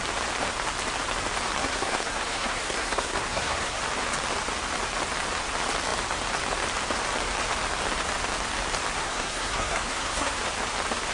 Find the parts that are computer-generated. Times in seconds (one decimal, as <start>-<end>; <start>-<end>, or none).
1.6-3.8; 9.0-10.4